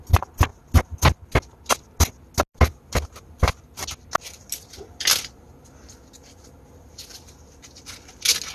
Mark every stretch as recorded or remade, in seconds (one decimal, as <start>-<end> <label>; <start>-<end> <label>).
0.0-8.5 recorded